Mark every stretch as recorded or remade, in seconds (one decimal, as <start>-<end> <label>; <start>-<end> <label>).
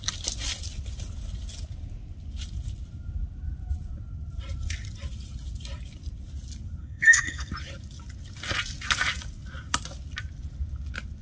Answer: 0.0-6.8 recorded; 6.8-7.5 remade; 7.5-11.2 recorded